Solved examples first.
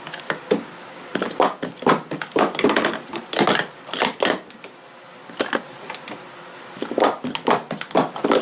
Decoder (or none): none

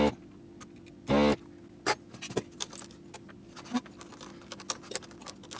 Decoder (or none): none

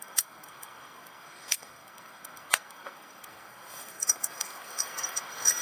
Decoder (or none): codec, SNAC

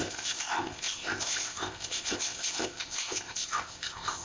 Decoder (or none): codec, ZipCodec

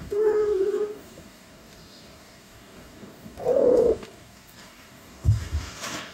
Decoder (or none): codec, DAC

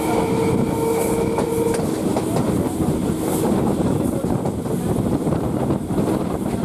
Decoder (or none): none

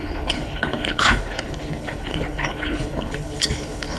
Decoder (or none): codec, HILCodec